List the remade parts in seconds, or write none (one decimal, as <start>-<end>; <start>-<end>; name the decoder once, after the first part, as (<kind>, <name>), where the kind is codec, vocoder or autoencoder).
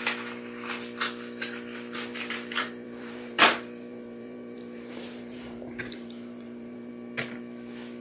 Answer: 2.1-6.9 (vocoder, BigVGAN v2)